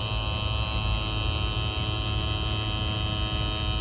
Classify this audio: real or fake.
real